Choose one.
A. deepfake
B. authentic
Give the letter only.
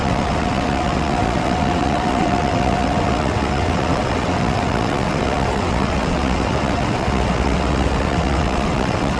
A